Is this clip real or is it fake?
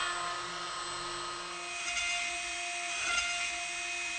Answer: real